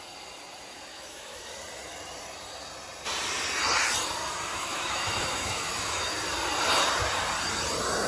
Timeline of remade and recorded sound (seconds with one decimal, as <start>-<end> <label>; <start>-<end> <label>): 0.0-0.9 recorded; 0.9-1.5 remade; 1.5-4.5 recorded; 4.5-6.1 remade; 6.1-8.1 recorded